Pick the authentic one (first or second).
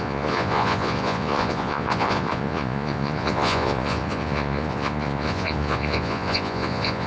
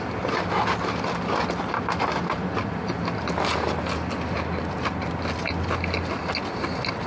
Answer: second